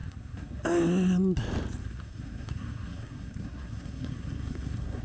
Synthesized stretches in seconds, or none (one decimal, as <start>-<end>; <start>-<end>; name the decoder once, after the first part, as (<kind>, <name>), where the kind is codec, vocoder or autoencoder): 0.0-0.6 (codec, SNAC); 1.8-5.0